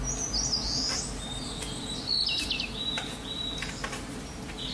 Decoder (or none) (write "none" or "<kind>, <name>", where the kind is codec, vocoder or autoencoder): none